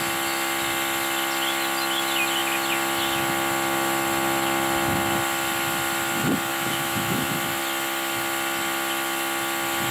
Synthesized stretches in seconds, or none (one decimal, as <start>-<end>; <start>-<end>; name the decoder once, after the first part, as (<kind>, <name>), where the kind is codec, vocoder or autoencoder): 6.5-7.6 (autoencoder, DAC-VAE)